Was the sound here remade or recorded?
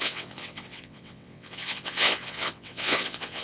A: remade